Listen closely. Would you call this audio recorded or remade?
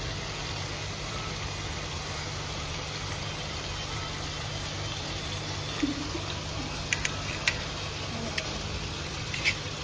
recorded